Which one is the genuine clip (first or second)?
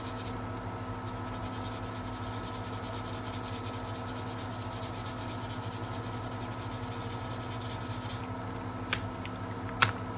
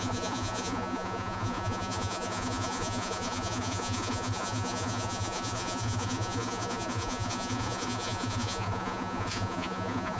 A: first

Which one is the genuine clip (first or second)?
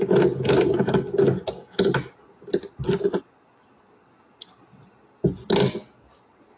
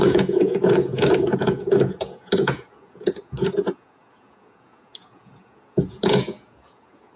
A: first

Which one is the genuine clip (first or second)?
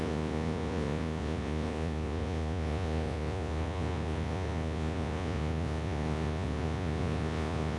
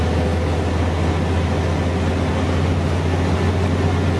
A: second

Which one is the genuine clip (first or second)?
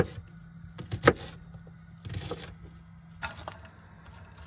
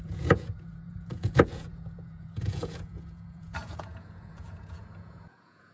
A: first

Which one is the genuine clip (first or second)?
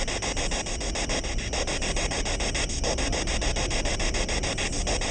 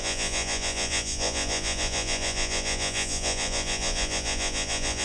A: first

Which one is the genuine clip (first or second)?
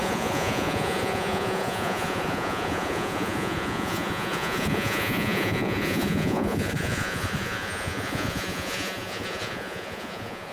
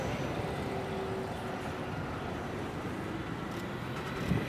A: second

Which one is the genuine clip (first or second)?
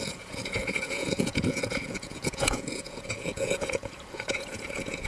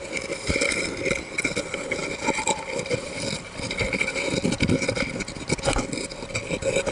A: second